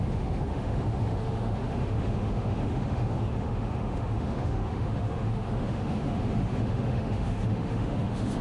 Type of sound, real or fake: fake